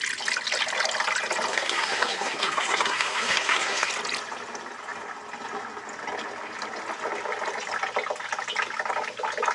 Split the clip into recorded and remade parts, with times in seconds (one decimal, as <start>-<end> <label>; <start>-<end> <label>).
0.0-1.5 recorded; 1.5-3.9 remade; 3.9-9.5 recorded